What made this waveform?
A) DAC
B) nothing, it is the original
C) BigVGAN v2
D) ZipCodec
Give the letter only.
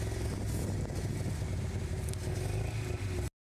B